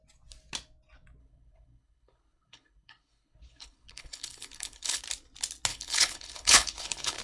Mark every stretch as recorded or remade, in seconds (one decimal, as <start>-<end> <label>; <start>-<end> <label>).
0.0-1.2 recorded; 1.2-5.0 remade; 5.0-5.7 recorded; 5.7-7.2 remade